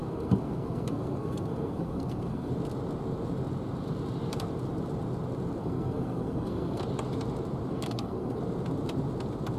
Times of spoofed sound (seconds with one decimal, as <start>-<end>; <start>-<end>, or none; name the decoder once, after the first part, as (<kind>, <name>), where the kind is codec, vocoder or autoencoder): 0.0-2.5 (codec, SNAC); 5.6-6.8; 7.7-8.4